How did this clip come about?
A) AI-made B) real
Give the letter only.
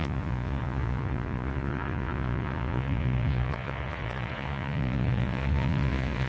A